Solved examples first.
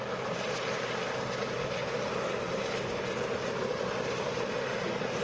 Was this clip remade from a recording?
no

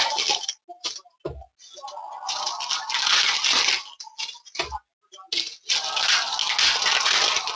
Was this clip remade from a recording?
no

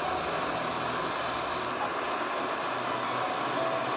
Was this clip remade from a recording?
no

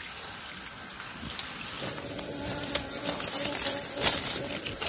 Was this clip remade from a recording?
no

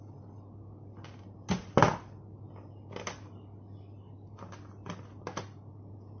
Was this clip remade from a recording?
no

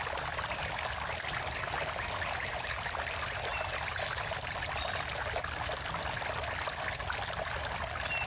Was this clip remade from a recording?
no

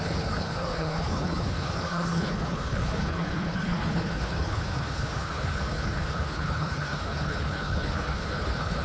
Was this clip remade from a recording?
yes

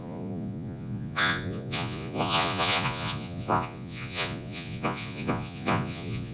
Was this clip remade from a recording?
yes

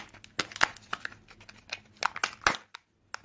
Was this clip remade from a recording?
no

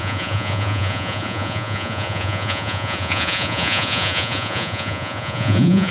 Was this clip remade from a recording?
yes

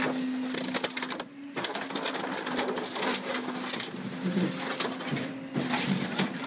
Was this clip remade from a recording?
no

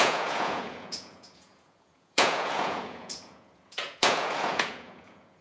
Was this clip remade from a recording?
yes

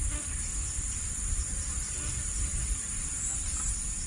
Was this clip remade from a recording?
no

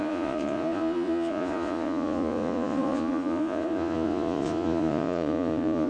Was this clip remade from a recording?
yes